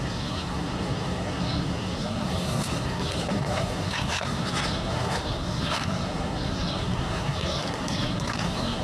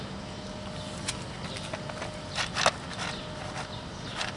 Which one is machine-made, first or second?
first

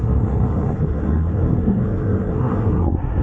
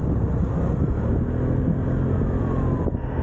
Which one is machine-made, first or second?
first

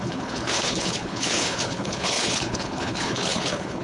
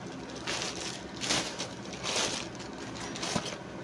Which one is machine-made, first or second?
first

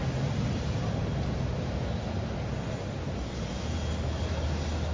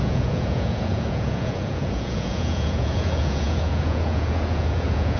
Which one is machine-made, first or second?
second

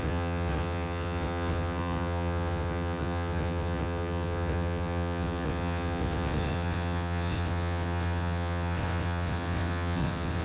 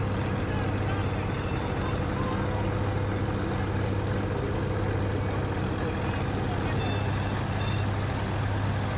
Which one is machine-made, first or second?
first